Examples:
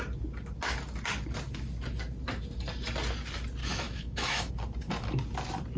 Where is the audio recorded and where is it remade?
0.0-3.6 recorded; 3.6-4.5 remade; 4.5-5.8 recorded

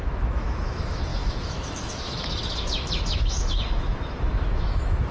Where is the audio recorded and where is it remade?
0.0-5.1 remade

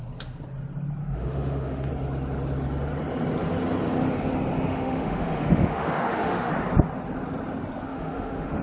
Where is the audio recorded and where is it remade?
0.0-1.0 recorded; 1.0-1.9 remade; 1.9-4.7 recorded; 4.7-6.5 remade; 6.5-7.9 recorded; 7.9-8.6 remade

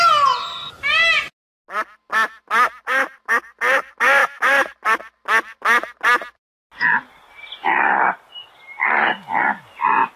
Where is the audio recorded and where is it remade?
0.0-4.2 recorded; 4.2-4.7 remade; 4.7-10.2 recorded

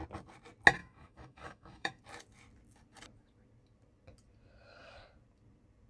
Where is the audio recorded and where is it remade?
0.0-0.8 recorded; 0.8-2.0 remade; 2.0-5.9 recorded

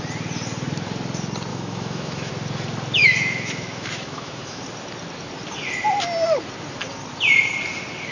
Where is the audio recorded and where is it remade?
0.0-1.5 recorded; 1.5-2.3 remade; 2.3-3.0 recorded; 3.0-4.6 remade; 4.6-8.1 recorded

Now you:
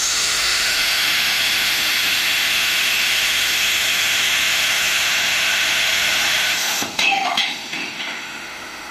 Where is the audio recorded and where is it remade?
0.0-8.9 remade